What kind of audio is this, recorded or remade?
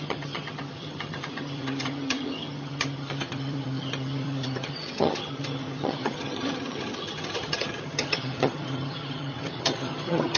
remade